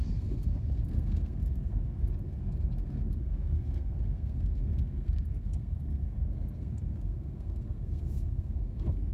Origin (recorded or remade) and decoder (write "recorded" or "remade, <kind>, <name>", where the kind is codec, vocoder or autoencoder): remade, codec, SNAC